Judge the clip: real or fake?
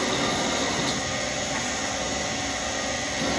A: real